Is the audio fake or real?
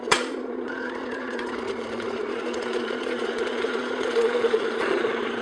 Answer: fake